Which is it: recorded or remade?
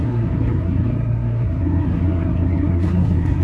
remade